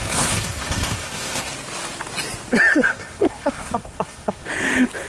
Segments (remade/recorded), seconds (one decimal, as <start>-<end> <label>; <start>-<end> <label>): 0.0-1.5 remade; 1.5-2.7 recorded; 2.7-4.5 remade; 4.5-5.1 recorded